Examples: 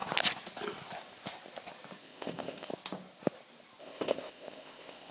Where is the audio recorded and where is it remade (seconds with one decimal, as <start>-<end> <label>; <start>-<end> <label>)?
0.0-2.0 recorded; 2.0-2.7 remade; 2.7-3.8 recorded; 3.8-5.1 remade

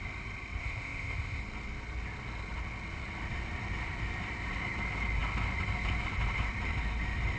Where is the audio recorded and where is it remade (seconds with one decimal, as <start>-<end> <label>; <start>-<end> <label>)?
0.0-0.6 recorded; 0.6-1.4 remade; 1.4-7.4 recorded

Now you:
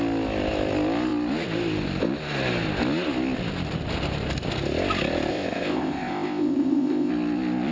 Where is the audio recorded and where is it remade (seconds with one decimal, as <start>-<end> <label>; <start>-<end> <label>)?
0.0-5.3 recorded; 5.3-7.1 remade; 7.1-7.7 recorded

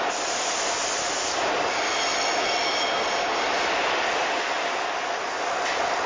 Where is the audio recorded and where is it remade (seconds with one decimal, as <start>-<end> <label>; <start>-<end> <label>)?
0.0-6.1 recorded

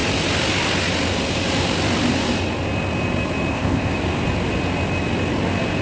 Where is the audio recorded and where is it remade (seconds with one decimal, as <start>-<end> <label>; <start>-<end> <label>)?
0.0-3.5 recorded; 3.5-3.9 remade; 3.9-5.8 recorded

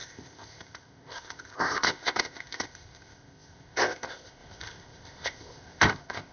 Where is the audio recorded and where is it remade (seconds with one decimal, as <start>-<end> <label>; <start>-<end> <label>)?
0.0-6.3 remade

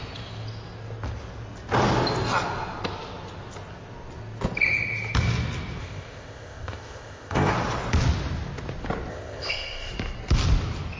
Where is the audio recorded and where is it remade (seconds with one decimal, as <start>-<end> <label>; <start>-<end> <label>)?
0.0-5.8 recorded; 5.8-7.5 remade; 7.5-9.1 recorded; 9.1-9.9 remade; 9.9-11.0 recorded

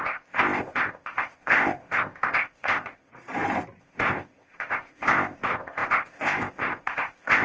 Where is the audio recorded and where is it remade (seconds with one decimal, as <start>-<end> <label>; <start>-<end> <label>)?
0.0-3.1 remade; 3.1-3.8 recorded; 3.8-7.4 remade